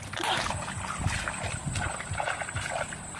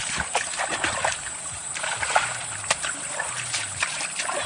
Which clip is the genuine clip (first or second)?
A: first